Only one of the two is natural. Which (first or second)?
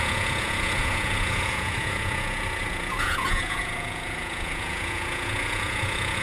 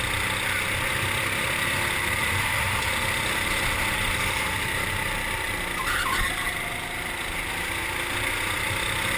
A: second